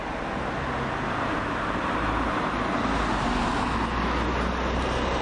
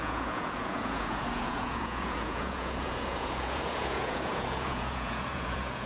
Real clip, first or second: first